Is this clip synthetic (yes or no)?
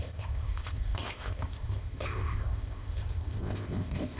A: yes